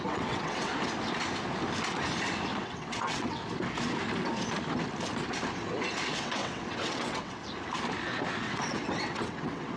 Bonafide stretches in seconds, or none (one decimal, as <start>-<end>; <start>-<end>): 0.7-2.6; 3.4-6.0; 7.4-8.4